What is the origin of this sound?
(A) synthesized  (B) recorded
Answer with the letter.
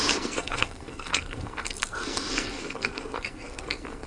A